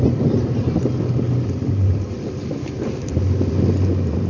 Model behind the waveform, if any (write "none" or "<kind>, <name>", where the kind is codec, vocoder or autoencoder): none